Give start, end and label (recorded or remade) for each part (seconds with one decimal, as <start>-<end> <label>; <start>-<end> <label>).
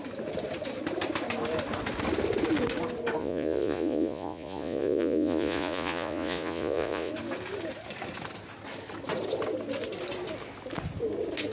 0.0-3.2 recorded; 3.2-7.1 remade; 7.1-11.5 recorded